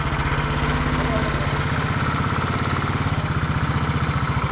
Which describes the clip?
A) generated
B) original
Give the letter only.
B